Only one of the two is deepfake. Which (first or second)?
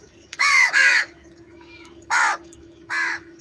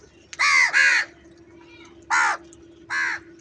first